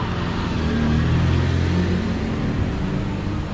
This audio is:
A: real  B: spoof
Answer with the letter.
A